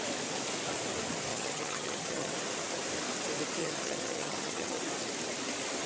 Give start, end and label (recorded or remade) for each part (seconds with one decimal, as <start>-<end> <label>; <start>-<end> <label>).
0.0-1.3 recorded; 1.3-2.3 remade; 2.3-3.6 recorded; 3.6-4.8 remade; 4.8-5.9 recorded